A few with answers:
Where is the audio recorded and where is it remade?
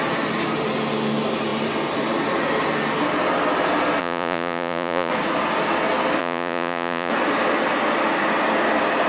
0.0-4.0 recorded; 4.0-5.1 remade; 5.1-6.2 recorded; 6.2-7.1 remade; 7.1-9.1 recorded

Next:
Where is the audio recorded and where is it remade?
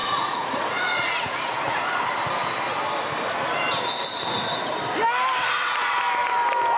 0.0-2.0 remade; 2.0-5.4 recorded; 5.4-6.0 remade; 6.0-6.8 recorded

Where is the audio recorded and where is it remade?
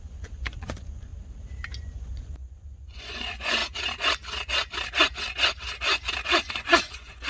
0.0-1.1 remade; 1.1-1.8 recorded; 1.8-3.6 remade; 3.6-6.5 recorded; 6.5-7.3 remade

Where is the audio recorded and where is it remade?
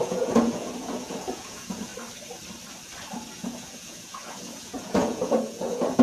0.0-1.9 remade; 1.9-3.3 recorded; 3.3-6.0 remade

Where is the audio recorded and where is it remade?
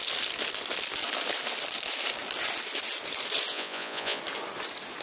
0.0-3.5 recorded; 3.5-4.2 remade; 4.2-5.0 recorded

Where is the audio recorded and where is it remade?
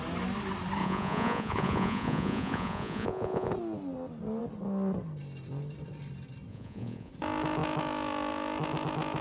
0.0-0.8 recorded; 0.8-3.5 remade; 3.5-6.5 recorded; 6.5-7.1 remade; 7.1-9.2 recorded